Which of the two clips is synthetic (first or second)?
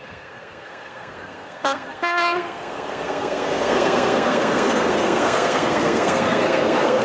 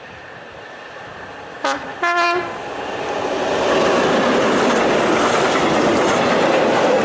first